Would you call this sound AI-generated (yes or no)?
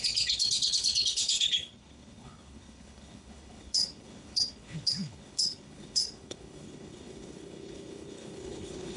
yes